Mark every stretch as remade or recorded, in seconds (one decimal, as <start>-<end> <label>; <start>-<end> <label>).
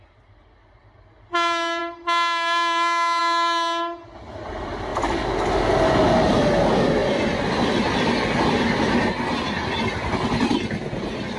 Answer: 0.0-11.4 recorded